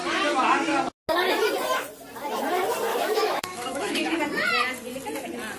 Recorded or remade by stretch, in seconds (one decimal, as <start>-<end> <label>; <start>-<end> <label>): 0.0-2.9 recorded; 2.9-4.2 remade; 4.2-5.6 recorded